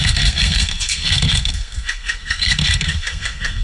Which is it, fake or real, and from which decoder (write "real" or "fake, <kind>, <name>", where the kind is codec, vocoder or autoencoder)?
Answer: fake, codec, SNAC